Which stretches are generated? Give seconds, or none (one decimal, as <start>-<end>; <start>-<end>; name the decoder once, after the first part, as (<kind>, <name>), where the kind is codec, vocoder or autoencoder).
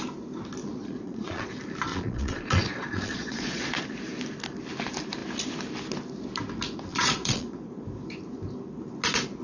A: 0.6-1.5 (vocoder, Vocos); 1.9-3.8; 6.9-7.8